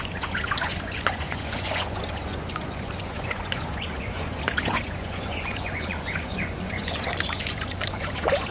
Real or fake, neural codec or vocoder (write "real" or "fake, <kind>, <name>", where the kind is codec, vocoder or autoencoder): fake, vocoder, Vocos